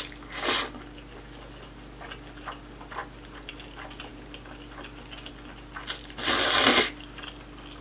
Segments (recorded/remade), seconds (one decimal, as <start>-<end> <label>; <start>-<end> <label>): 0.0-7.8 recorded